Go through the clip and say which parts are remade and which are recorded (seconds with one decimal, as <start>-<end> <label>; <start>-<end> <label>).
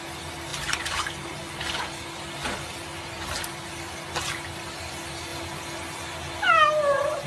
0.0-7.3 recorded